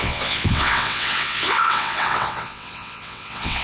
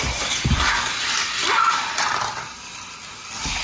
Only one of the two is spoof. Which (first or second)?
first